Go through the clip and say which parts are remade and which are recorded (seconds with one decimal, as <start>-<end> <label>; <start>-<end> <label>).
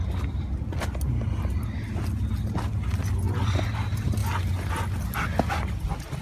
0.0-6.2 recorded